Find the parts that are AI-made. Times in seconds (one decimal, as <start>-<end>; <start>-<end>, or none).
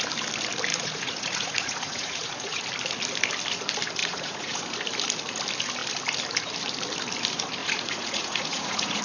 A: 0.7-2.6; 4.0-4.6; 7.6-9.0